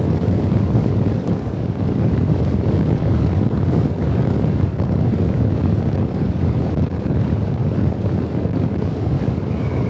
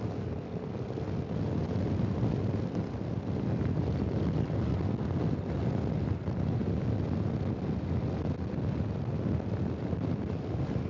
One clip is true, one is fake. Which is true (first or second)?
second